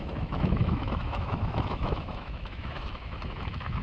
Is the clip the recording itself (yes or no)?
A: no